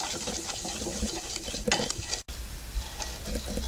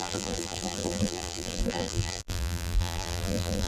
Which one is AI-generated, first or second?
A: second